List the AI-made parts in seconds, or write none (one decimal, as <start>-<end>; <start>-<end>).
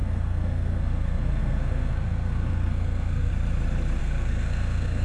0.0-3.3; 4.0-5.0